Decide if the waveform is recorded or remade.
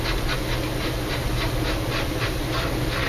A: recorded